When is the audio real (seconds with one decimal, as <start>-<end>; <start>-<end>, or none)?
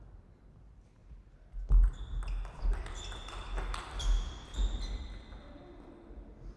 0.0-6.6